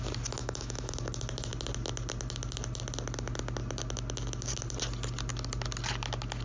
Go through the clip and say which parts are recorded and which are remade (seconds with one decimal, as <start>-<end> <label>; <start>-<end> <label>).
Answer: 0.0-0.4 recorded; 0.4-0.9 remade; 0.9-6.4 recorded